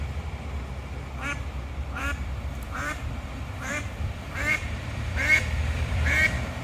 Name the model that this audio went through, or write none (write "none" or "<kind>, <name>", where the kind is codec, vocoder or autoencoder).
vocoder, BigVGAN v2